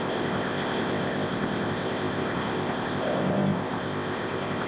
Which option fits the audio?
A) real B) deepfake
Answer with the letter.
B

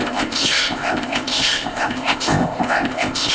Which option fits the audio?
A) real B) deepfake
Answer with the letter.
B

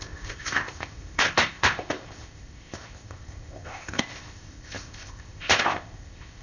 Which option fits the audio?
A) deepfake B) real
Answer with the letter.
A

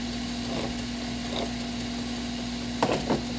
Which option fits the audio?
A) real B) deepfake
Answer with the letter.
A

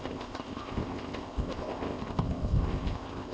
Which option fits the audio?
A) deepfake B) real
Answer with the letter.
A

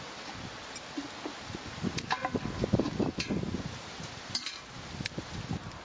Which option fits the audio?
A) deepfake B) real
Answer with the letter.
B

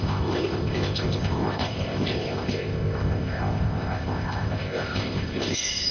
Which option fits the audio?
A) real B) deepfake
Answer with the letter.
B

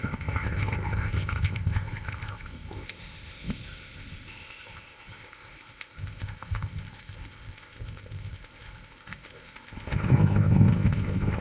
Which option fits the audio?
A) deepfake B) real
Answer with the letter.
A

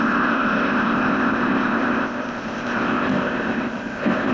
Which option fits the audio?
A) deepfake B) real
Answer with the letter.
A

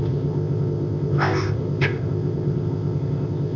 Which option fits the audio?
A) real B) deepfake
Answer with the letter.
B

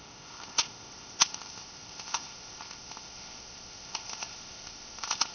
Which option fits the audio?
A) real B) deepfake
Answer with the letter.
B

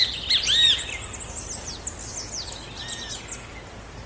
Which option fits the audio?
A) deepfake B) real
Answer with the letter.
B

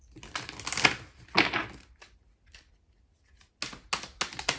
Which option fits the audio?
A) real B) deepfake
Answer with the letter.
A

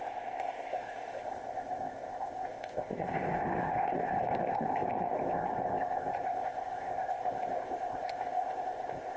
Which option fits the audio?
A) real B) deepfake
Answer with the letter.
B